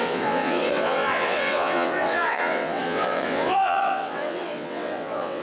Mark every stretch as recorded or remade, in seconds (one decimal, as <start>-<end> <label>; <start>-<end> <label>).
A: 0.0-5.4 remade